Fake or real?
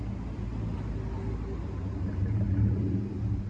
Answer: real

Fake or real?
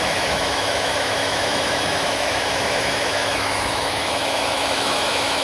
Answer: fake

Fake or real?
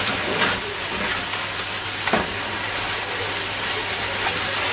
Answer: real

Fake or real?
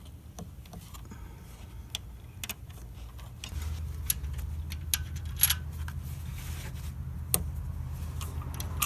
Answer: real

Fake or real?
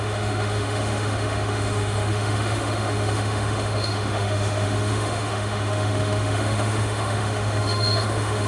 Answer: fake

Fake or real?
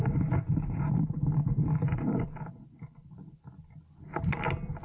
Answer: real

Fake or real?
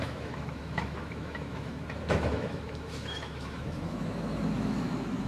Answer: fake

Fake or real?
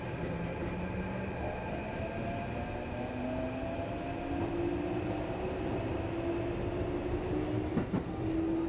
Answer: real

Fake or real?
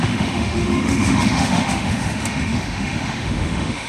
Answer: fake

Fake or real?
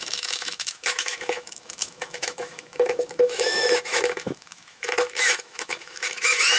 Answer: fake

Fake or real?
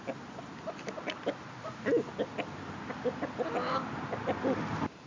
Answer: real